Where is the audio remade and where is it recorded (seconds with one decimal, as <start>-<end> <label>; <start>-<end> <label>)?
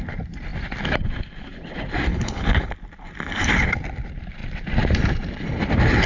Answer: 0.0-2.1 recorded; 2.1-2.7 remade; 2.7-6.1 recorded